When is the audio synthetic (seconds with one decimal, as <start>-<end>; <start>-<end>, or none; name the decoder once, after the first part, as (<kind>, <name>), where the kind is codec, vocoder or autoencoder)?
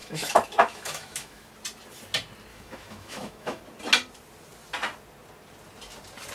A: 0.0-1.5 (autoencoder, DAC-VAE); 2.5-3.6